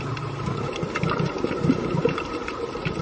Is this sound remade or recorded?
remade